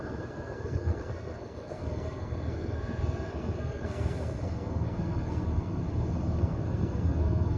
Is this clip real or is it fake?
fake